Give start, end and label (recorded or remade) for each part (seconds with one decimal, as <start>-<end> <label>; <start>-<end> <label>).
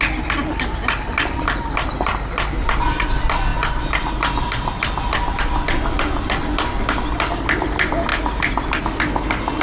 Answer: 0.0-9.6 recorded